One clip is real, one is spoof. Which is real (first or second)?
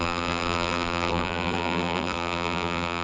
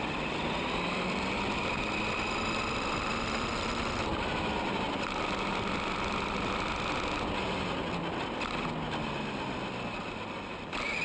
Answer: second